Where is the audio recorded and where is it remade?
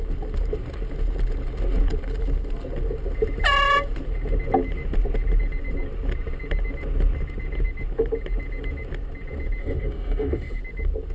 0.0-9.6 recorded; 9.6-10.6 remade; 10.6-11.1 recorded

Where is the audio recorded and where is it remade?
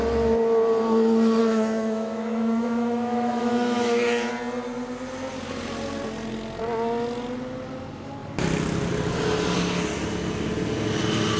0.0-1.4 recorded; 1.4-4.3 remade; 4.3-11.4 recorded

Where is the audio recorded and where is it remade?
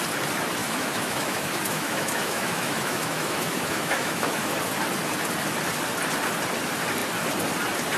0.0-0.6 recorded; 0.6-4.5 remade; 4.5-8.0 recorded